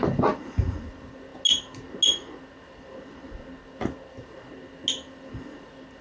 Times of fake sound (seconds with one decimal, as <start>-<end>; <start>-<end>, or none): none